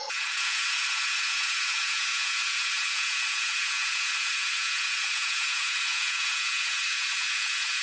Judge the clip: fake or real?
fake